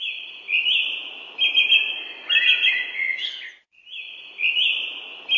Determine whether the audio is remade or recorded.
recorded